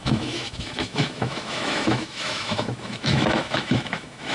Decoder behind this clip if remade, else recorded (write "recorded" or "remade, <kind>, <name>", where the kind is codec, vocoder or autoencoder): remade, autoencoder, DAC-VAE